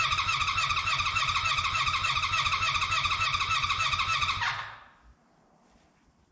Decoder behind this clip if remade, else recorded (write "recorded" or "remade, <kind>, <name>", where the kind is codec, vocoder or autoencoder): recorded